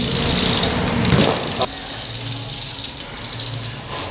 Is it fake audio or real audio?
real